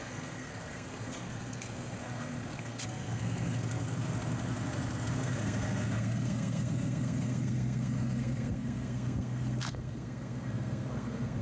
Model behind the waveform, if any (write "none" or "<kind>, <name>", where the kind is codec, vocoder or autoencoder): codec, SNAC